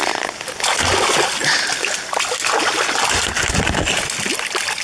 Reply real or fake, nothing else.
real